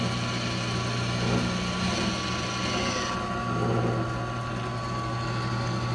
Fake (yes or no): no